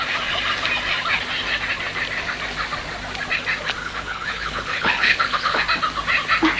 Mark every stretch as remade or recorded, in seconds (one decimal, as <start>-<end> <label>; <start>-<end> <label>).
0.0-3.8 recorded; 3.8-5.6 remade; 5.6-6.6 recorded